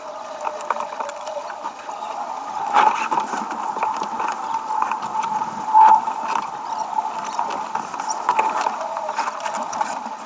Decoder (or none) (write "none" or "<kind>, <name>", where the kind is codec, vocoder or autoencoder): none